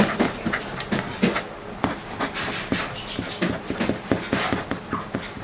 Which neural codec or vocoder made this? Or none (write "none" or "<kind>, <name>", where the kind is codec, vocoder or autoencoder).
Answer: none